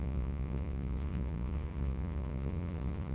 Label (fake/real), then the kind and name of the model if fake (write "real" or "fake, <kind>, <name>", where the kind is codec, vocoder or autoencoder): fake, vocoder, Vocos